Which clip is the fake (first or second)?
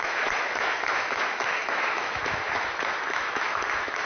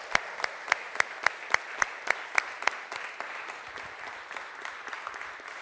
first